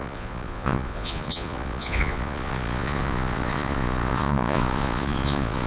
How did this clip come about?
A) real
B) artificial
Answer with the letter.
B